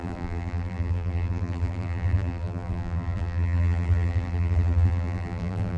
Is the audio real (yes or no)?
no